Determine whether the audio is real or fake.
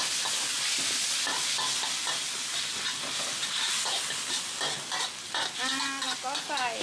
real